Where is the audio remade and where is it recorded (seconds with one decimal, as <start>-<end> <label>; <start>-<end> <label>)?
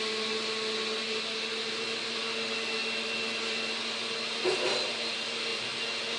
0.0-6.2 recorded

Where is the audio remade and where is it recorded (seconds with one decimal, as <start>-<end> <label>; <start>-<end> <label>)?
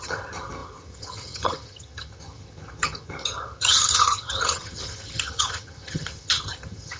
0.0-7.0 remade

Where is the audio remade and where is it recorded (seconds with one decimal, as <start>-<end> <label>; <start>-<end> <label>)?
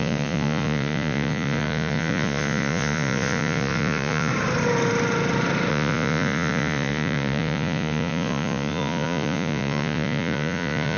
0.0-4.3 remade; 4.3-5.7 recorded; 5.7-11.0 remade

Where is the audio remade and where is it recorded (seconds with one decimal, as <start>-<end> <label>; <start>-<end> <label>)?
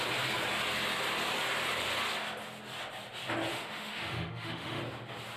0.0-3.5 recorded; 3.5-4.8 remade; 4.8-5.4 recorded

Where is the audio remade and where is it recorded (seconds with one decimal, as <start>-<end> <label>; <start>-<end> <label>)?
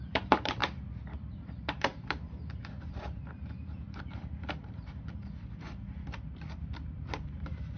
0.0-0.6 remade; 0.6-1.3 recorded; 1.3-5.2 remade; 5.2-6.8 recorded; 6.8-7.8 remade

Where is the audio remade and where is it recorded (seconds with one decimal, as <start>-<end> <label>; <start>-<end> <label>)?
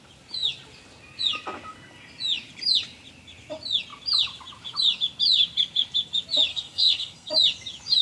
0.0-6.5 recorded; 6.5-7.3 remade; 7.3-8.0 recorded